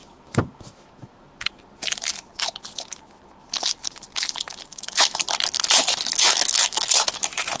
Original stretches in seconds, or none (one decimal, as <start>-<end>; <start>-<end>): 1.5-4.7; 5.2-5.8